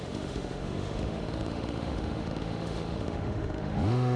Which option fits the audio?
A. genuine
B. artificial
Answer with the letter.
B